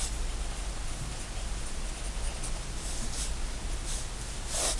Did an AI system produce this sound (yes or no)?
no